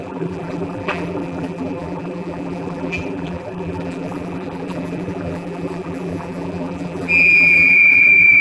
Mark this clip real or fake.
fake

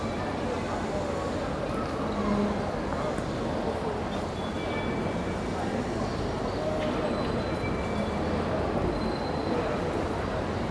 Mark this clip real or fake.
real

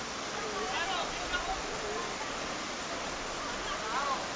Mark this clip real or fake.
real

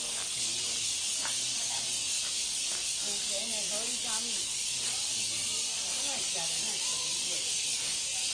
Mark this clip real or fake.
fake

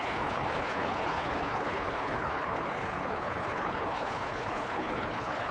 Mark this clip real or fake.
fake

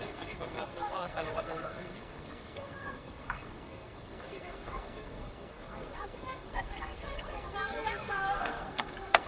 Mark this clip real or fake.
fake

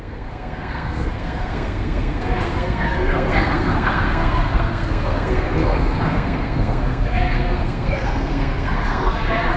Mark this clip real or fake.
fake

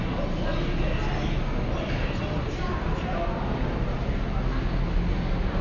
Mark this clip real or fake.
real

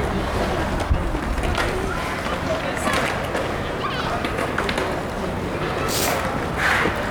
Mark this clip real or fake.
real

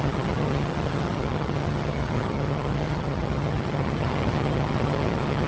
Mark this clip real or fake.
fake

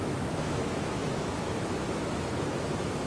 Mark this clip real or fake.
fake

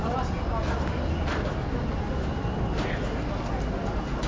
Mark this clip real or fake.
real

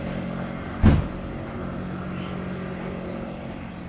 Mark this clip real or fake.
real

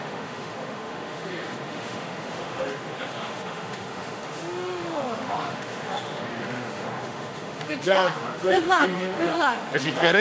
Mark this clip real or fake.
fake